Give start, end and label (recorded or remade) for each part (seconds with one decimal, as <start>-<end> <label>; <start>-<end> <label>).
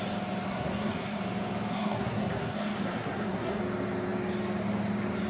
0.0-0.5 recorded; 0.5-1.2 remade; 1.2-1.7 recorded; 1.7-3.6 remade; 3.6-5.3 recorded